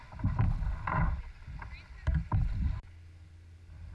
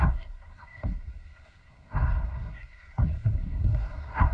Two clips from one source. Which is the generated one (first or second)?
second